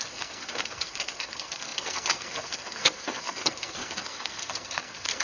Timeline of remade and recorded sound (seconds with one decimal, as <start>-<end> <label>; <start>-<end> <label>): 0.0-5.2 remade